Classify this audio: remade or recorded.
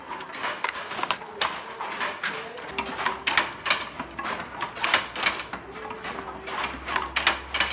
recorded